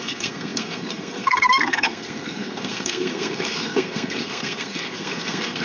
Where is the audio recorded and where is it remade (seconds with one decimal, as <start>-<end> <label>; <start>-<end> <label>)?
0.0-5.6 remade